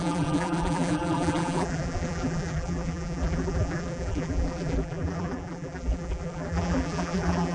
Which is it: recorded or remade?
remade